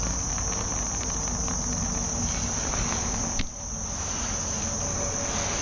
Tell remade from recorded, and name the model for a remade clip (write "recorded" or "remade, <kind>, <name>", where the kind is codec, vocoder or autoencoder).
recorded